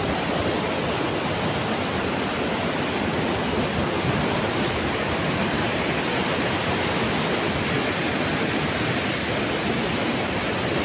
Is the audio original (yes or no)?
yes